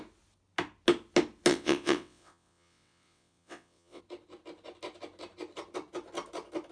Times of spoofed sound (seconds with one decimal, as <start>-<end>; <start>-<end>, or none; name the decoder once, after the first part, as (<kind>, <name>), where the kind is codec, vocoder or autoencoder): 1.5-4.0 (vocoder, WaveNeXt)